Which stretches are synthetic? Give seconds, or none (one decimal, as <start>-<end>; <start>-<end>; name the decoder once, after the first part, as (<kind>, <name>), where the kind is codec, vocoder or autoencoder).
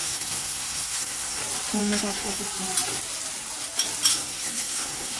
0.0-1.4 (codec, SNAC); 1.8-2.4; 4.1-5.2